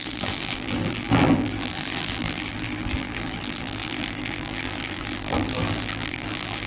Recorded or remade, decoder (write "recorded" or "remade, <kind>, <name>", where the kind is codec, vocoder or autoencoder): remade, vocoder, BigVGAN v2